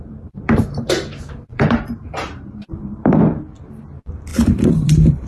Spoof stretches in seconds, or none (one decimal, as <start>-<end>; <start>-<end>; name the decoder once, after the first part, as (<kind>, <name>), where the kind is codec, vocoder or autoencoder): 0.0-3.2 (vocoder, BigVGAN v2); 4.3-5.3